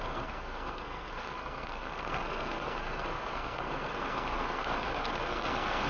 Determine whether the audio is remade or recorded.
remade